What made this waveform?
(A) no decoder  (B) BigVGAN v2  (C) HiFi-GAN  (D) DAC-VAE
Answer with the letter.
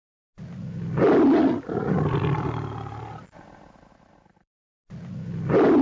A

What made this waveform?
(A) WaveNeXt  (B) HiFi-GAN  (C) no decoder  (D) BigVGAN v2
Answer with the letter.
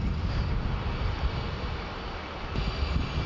C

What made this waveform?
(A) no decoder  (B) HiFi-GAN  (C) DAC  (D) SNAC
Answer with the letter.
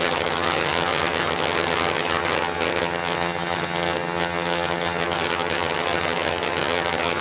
B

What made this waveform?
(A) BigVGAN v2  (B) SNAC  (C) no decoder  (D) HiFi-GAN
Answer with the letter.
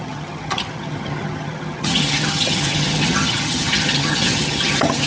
D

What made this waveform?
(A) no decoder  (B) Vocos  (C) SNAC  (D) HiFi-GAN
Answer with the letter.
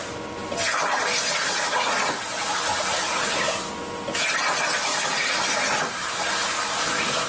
A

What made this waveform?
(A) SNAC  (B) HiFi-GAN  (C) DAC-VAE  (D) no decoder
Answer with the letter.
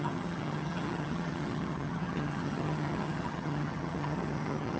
B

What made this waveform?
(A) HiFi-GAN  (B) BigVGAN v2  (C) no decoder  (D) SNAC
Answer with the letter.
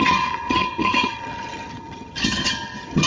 A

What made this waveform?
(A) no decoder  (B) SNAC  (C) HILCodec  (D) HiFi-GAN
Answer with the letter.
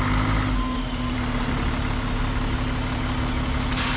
A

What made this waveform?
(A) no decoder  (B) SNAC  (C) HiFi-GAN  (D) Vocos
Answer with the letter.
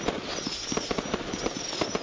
A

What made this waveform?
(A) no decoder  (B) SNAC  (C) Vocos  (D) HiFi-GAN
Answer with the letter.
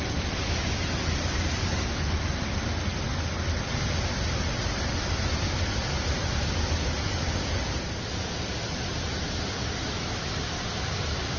A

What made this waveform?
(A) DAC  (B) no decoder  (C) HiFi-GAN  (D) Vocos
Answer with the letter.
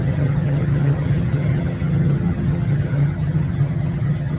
C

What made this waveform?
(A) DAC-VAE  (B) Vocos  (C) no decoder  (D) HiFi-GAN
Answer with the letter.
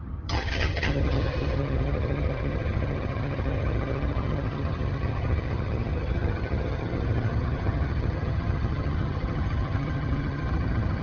D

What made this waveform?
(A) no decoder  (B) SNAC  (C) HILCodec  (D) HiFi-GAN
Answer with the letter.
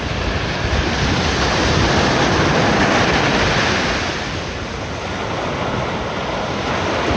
A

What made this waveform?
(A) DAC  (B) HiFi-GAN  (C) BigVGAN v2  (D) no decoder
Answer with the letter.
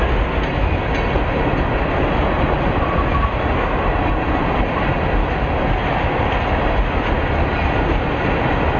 D